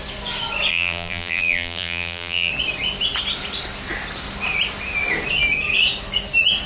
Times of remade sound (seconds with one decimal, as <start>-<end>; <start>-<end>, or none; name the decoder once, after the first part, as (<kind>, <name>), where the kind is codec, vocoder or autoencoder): 0.7-2.5 (vocoder, BigVGAN v2)